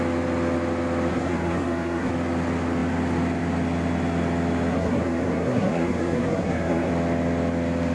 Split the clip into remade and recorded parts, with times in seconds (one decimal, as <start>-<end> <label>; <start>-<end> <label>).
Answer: 0.0-1.1 recorded; 1.1-2.1 remade; 2.1-4.7 recorded; 4.7-6.9 remade; 6.9-7.9 recorded